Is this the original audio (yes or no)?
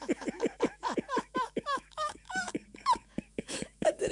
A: no